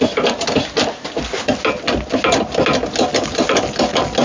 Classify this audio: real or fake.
real